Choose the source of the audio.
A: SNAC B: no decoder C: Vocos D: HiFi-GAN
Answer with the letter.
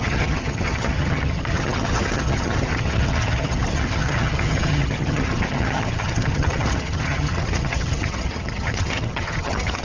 D